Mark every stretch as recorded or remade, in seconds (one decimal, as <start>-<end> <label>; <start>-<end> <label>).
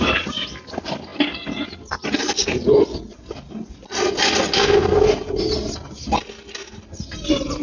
0.0-7.6 recorded